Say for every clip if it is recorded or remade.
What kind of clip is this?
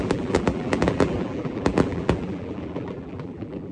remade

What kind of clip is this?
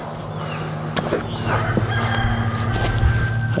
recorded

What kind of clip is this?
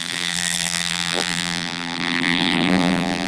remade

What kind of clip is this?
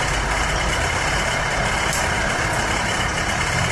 remade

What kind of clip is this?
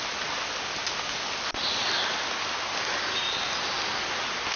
recorded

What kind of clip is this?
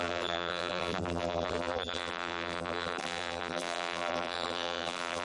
remade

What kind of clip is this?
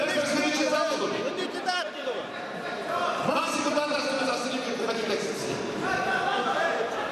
remade